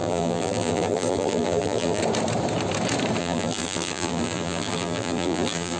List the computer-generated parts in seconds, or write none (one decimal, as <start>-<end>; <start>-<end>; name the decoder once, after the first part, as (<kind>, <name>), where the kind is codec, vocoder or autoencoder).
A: 0.0-2.0 (vocoder, BigVGAN v2); 3.2-5.8